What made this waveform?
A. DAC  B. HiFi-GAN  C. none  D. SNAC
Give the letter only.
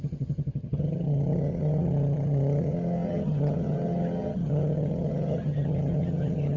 B